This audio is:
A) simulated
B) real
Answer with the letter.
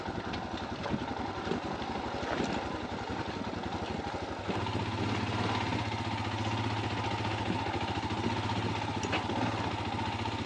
B